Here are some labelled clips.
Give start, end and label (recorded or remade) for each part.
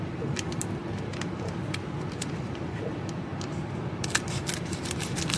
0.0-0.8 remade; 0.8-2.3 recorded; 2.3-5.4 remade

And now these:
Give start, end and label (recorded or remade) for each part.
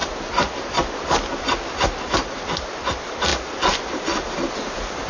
0.0-1.4 remade; 1.4-3.3 recorded; 3.3-5.1 remade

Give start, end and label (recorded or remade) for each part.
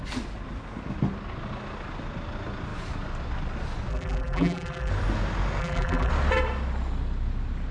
0.0-3.9 recorded; 3.9-4.9 remade; 4.9-5.6 recorded; 5.6-6.1 remade; 6.1-7.7 recorded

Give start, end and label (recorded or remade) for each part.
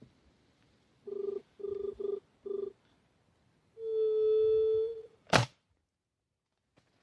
0.0-5.0 recorded; 5.0-5.8 remade; 5.8-7.0 recorded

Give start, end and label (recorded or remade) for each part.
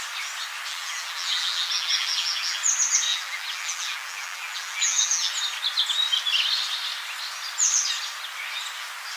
0.0-0.7 recorded; 0.7-2.6 remade; 2.6-3.1 recorded; 3.1-5.3 remade; 5.3-9.2 recorded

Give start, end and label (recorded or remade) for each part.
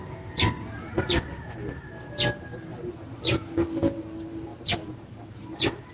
0.0-2.7 recorded; 2.7-3.8 remade; 3.8-5.9 recorded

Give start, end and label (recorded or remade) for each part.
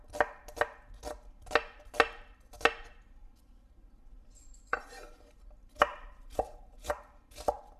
0.0-4.7 recorded; 4.7-5.4 remade; 5.4-5.9 recorded; 5.9-6.9 remade; 6.9-7.8 recorded